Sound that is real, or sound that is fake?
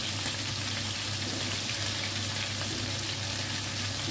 real